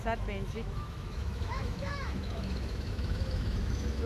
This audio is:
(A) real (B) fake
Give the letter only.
B